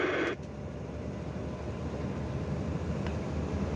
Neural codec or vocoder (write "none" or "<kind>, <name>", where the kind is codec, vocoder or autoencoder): none